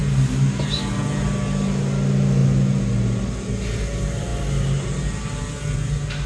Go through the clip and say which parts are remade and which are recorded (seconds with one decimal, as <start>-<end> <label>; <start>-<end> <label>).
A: 0.0-6.3 recorded